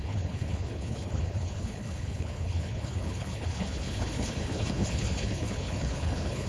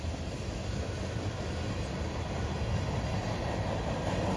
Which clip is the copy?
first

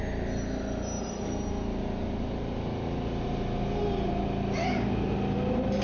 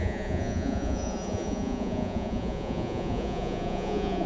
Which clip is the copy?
second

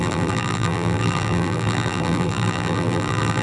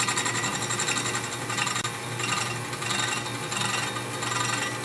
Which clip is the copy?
first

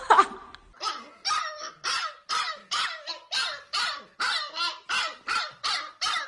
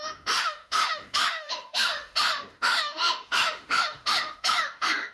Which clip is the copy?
second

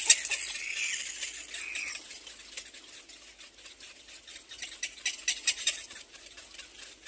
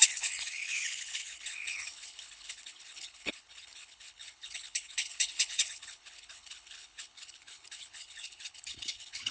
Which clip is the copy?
second